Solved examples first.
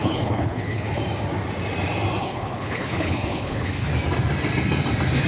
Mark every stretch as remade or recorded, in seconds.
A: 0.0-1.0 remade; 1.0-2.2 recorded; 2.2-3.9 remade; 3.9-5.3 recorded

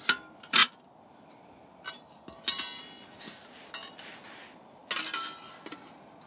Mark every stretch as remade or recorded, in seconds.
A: 0.0-6.3 recorded

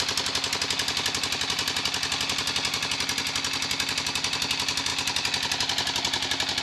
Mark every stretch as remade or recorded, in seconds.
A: 0.0-6.6 recorded

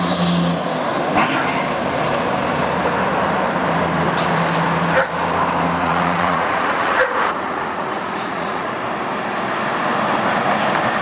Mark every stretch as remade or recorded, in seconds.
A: 0.0-5.8 recorded; 5.8-8.7 remade; 8.7-11.0 recorded

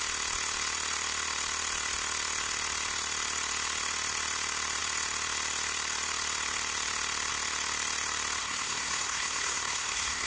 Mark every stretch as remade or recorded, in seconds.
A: 0.0-8.4 recorded; 8.4-10.3 remade